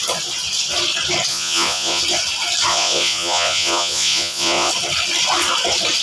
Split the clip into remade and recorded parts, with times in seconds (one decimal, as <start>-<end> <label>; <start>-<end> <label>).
0.0-1.3 recorded; 1.3-2.0 remade; 2.0-2.7 recorded; 2.7-4.7 remade; 4.7-6.0 recorded